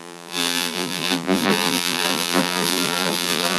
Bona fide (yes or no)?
no